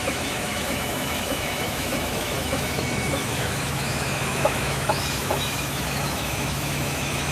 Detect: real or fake fake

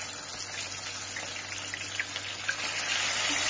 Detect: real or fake real